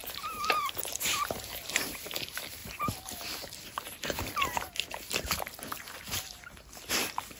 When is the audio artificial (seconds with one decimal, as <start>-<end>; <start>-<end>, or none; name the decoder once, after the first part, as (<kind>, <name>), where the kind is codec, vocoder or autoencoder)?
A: none